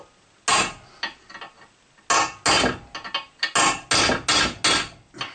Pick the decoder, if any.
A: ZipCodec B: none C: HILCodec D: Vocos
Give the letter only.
B